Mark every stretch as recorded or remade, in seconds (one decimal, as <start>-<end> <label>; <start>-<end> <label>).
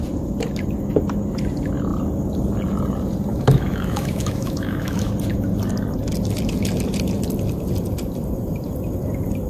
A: 0.0-3.3 recorded; 3.3-5.1 remade; 5.1-9.5 recorded